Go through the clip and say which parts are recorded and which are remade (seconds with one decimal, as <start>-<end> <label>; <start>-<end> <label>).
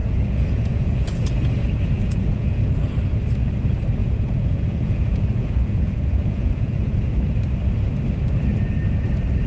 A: 0.0-1.5 remade; 1.5-2.0 recorded; 2.0-2.9 remade; 2.9-4.0 recorded; 4.0-7.2 remade; 7.2-9.5 recorded